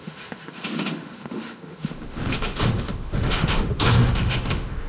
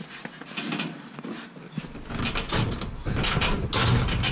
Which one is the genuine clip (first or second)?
second